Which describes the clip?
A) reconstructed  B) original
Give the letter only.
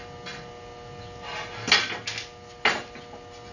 B